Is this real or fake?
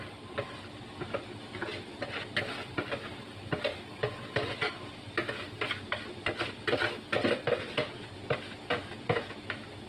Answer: real